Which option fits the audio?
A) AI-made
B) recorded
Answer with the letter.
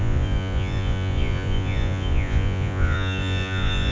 A